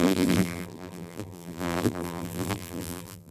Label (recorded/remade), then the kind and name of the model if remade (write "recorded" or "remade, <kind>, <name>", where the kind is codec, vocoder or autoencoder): remade, vocoder, BigVGAN v2